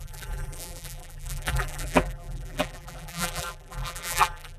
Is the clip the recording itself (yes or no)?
no